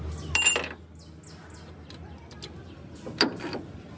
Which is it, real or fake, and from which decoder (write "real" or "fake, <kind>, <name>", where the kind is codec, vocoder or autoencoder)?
real